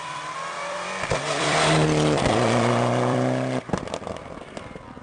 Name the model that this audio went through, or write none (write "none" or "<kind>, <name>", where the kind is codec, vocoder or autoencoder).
vocoder, BigVGAN v2